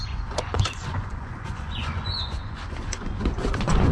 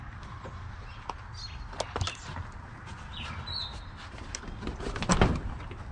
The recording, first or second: second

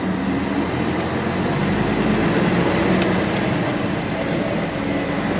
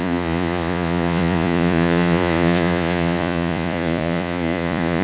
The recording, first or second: first